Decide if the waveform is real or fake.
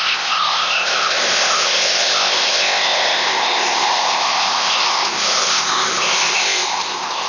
fake